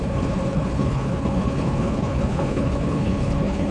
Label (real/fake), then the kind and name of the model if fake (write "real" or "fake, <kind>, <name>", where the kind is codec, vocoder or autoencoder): fake, codec, HILCodec